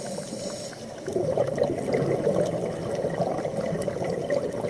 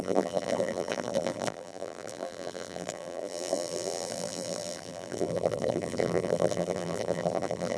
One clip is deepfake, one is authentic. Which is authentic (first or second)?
first